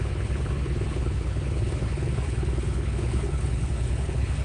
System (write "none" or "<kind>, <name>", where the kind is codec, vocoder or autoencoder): codec, HILCodec